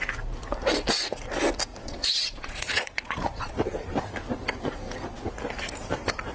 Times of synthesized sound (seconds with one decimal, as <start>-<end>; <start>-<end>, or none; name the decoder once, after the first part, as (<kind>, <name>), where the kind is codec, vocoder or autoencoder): 1.7-3.5 (vocoder, Vocos)

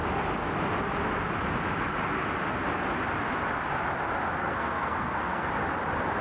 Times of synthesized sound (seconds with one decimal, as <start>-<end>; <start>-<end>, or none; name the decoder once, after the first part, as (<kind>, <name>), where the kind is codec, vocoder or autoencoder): 4.4-5.5 (codec, SNAC)

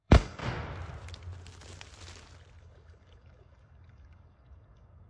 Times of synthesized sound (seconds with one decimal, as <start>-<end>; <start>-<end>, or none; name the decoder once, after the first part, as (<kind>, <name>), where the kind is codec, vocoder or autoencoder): 0.0-0.4 (codec, DAC); 2.6-5.1

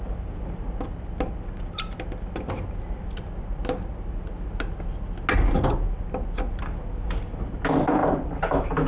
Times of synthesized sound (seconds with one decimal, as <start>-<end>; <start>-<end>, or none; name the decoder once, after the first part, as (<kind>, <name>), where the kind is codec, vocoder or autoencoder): none

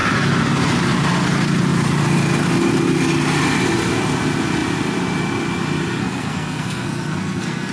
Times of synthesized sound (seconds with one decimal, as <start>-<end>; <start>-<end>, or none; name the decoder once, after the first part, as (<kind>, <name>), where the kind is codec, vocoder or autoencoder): 6.0-7.7 (codec, SNAC)

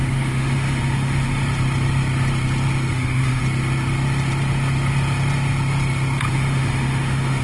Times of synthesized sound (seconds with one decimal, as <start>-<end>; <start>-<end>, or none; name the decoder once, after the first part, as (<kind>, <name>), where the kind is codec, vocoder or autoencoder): 0.0-1.4 (autoencoder, DAC-VAE); 2.9-3.4; 6.3-7.4

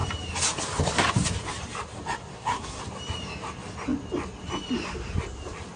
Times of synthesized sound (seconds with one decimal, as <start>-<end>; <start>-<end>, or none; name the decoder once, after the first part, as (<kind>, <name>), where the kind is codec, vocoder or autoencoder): 2.3-2.8 (codec, SNAC)